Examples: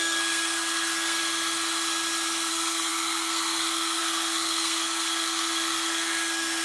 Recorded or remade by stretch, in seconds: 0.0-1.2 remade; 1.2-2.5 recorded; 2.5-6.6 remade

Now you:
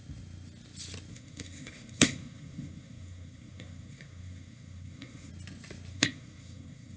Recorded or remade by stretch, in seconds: 0.0-1.1 recorded; 1.1-5.3 remade; 5.3-5.9 recorded; 5.9-7.0 remade